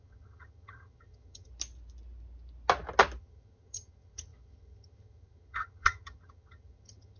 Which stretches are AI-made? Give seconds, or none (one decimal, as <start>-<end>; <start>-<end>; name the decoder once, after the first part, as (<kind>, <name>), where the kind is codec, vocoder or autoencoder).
0.0-1.5 (vocoder, HiFi-GAN); 3.2-7.2

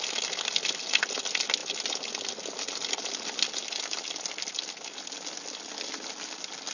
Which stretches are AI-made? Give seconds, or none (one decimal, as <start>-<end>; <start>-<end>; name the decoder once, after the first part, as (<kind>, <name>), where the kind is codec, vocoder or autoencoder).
none

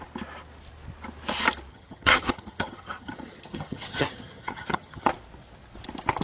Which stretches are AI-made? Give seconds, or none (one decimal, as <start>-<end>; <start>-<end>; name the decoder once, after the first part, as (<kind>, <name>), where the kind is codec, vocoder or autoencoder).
1.7-5.1 (vocoder, HiFi-GAN)

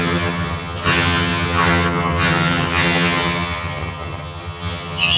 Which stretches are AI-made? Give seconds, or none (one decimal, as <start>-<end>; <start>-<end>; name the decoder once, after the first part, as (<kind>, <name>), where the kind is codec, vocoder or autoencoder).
0.0-5.2 (vocoder, HiFi-GAN)

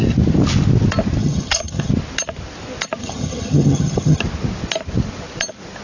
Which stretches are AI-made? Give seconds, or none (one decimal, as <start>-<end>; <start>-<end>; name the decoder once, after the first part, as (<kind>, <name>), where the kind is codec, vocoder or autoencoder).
1.2-1.9 (vocoder, HiFi-GAN); 3.0-4.2

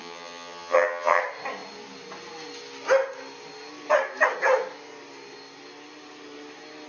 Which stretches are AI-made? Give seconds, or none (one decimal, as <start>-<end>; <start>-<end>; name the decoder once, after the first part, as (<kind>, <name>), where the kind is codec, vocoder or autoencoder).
0.0-1.2 (vocoder, HiFi-GAN)